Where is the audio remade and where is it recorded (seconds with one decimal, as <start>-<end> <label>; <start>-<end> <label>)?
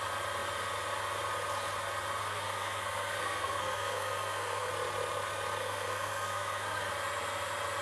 0.0-2.2 recorded; 2.2-4.7 remade; 4.7-5.6 recorded; 5.6-6.9 remade; 6.9-7.8 recorded